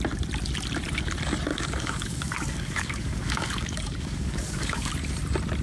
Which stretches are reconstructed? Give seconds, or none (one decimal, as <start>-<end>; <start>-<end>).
1.5-4.9